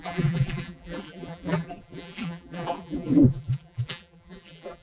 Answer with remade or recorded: remade